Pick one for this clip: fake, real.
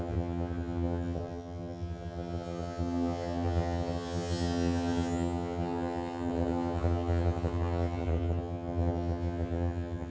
fake